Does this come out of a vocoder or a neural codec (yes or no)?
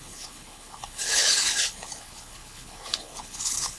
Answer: yes